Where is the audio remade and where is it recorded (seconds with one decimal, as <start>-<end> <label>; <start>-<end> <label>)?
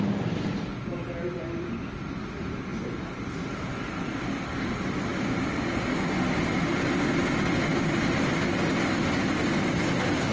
0.0-10.3 recorded